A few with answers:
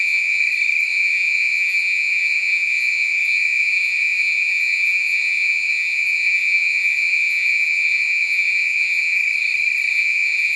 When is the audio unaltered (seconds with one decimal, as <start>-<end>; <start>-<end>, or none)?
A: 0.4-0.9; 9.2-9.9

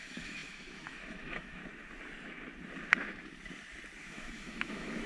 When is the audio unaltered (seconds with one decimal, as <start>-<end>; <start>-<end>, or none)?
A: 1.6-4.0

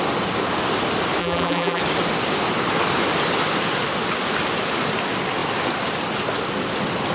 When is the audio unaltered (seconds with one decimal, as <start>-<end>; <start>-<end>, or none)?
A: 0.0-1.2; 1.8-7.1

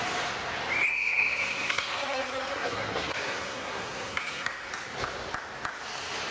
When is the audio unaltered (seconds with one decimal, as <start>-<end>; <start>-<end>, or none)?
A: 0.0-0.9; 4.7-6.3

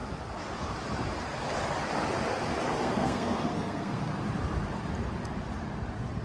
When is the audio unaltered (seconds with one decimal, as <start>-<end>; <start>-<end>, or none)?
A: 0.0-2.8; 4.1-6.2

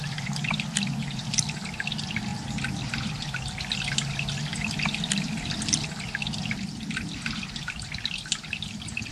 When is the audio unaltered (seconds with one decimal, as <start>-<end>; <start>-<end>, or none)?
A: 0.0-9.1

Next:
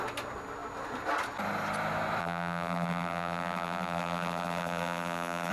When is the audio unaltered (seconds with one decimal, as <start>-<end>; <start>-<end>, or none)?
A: 0.0-2.2